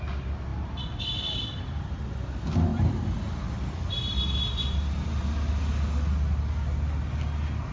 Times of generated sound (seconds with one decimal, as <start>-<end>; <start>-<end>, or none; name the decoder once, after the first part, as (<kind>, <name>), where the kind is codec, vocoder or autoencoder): 2.7-4.3 (vocoder, BigVGAN v2)